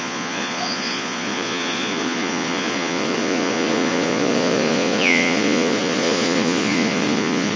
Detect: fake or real fake